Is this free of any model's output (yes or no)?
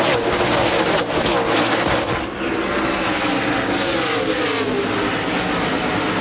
yes